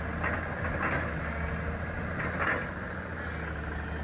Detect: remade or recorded recorded